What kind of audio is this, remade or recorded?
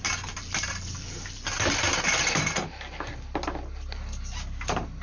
recorded